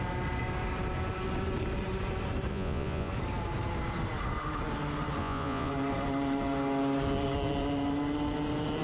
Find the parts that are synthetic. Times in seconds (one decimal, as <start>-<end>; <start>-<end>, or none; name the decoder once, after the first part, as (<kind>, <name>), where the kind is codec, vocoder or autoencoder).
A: 2.5-3.1 (vocoder, Vocos); 5.2-5.7